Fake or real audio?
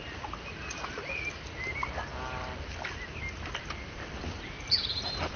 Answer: real